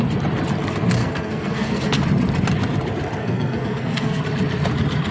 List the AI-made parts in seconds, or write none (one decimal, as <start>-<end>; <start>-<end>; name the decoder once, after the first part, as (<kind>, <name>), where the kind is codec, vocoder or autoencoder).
1.0-2.0 (codec, SNAC); 3.2-4.2